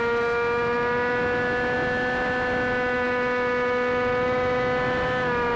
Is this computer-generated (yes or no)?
no